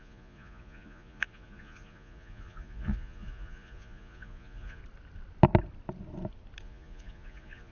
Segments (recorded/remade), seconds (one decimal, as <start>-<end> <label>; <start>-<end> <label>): 0.0-4.8 remade; 4.8-6.6 recorded; 6.6-7.7 remade